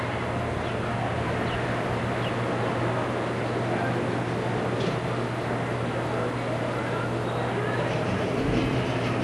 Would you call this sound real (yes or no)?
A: yes